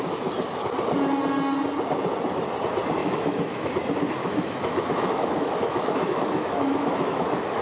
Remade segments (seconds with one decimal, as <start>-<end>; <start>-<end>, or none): 3.0-3.7; 4.2-7.6